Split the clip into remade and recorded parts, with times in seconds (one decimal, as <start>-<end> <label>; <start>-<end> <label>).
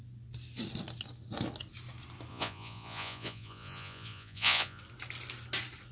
0.0-2.3 recorded; 2.3-4.8 remade; 4.8-5.9 recorded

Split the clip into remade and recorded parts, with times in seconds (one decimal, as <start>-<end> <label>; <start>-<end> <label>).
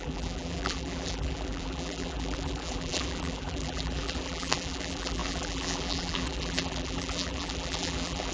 0.0-8.3 remade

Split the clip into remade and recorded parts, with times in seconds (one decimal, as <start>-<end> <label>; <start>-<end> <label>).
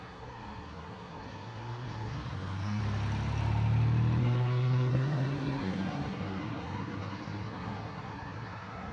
0.0-2.8 remade; 2.8-4.2 recorded; 4.2-8.9 remade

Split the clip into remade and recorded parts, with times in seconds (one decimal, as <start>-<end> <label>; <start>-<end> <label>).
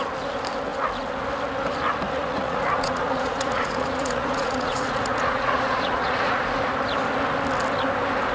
0.0-2.2 recorded; 2.2-6.4 remade; 6.4-8.3 recorded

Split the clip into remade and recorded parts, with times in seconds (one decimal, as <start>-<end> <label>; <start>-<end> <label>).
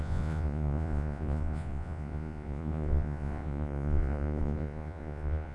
0.0-5.5 remade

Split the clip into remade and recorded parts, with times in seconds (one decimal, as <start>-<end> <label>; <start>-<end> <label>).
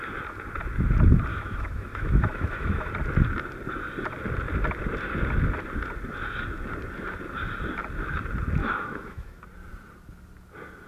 0.0-1.3 recorded; 1.3-2.9 remade; 2.9-8.6 recorded; 8.6-9.4 remade; 9.4-10.9 recorded